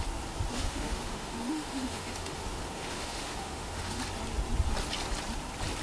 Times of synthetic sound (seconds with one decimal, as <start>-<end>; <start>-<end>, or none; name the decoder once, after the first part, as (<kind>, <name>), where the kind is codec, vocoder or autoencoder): 0.5-4.0 (autoencoder, DAC-VAE)